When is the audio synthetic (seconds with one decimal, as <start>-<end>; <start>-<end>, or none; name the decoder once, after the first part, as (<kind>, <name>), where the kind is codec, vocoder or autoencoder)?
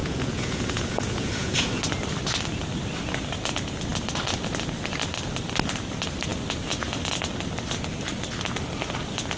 0.0-1.8 (vocoder, Vocos)